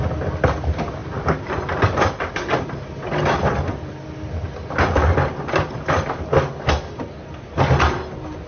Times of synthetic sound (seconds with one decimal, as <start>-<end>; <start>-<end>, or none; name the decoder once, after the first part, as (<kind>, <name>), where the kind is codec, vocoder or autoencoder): none

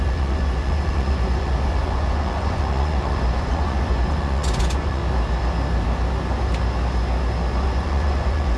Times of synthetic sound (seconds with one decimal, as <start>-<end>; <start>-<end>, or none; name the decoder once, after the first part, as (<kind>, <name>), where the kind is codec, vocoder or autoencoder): 0.0-5.0 (vocoder, Vocos); 7.6-8.6

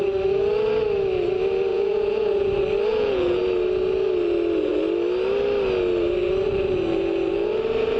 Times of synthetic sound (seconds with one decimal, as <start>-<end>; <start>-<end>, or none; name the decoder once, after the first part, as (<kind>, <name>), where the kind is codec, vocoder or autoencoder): 1.7-2.5 (vocoder, Vocos); 2.9-3.4

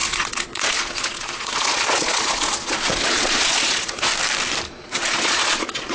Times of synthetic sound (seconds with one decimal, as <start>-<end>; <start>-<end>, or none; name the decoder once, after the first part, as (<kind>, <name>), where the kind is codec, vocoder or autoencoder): 0.0-4.1 (vocoder, Vocos); 4.7-5.9

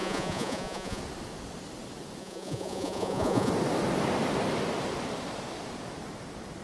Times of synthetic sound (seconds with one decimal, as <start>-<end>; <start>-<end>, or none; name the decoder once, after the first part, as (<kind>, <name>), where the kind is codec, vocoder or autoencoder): 0.0-1.0 (vocoder, Vocos); 2.2-3.5

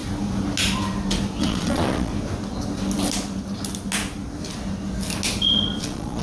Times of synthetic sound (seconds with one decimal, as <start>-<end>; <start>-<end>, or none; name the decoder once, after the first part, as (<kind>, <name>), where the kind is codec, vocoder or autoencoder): 1.4-2.1 (vocoder, Vocos); 5.8-6.2

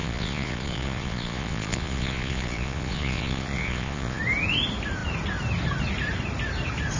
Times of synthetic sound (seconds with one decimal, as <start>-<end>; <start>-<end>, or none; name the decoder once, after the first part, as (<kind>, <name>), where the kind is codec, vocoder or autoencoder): 0.0-4.2 (vocoder, Vocos)